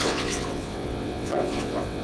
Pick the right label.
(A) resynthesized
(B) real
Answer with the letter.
A